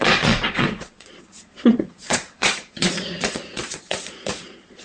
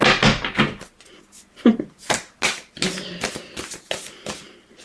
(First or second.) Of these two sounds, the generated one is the first